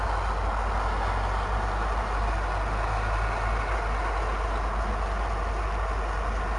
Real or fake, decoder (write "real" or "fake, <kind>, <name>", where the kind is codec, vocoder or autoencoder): real